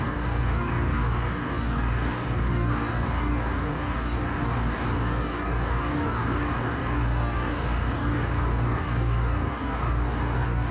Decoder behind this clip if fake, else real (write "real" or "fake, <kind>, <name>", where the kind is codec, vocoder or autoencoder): fake, codec, DAC